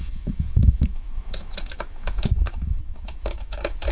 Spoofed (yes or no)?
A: yes